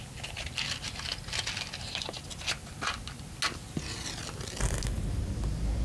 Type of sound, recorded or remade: recorded